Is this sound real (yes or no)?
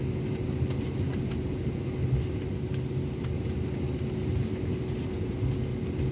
yes